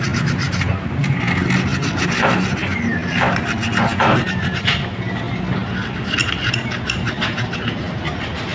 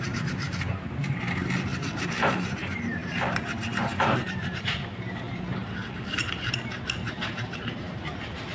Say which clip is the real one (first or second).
first